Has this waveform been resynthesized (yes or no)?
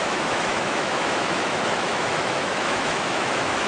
yes